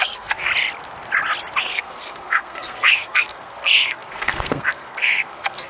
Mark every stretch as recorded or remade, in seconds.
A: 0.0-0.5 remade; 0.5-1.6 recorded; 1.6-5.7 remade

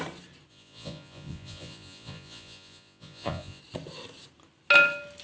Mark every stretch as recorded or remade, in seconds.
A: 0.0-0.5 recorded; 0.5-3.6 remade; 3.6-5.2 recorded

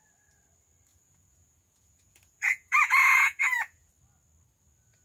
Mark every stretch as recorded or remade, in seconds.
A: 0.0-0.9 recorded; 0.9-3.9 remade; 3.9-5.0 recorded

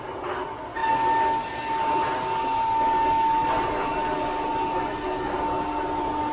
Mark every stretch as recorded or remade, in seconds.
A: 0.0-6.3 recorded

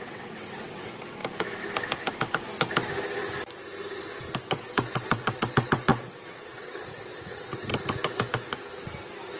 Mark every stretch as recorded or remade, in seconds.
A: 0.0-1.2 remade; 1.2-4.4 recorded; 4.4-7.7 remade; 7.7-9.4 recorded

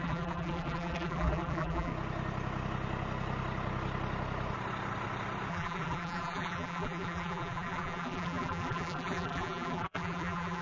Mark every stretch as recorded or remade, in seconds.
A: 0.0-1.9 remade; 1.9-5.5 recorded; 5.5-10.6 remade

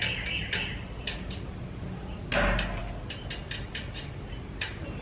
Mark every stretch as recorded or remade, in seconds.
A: 0.0-5.0 recorded